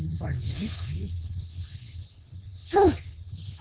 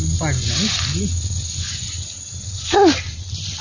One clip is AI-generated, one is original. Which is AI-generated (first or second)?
first